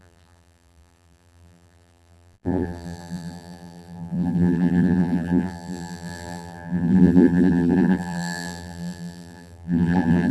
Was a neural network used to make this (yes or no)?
yes